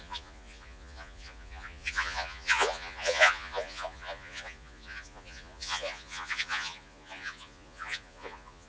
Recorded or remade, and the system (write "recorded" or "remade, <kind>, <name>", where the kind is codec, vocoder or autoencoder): remade, vocoder, Vocos